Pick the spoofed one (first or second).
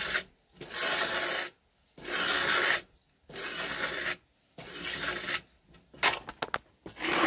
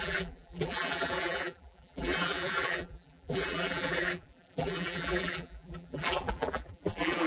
second